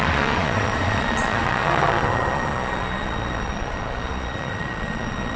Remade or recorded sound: remade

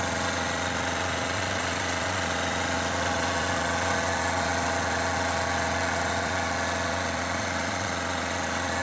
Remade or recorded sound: remade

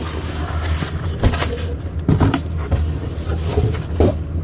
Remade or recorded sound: recorded